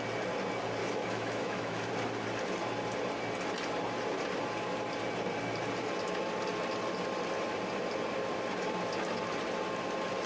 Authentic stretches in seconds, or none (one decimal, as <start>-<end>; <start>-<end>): 0.0-0.8; 1.9-10.3